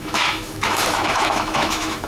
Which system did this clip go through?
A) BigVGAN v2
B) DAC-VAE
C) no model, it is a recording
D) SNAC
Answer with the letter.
B